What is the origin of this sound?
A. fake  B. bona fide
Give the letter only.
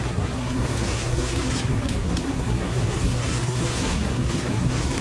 A